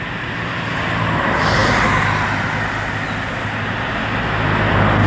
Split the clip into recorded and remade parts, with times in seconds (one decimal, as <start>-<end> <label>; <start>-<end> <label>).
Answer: 0.0-5.1 recorded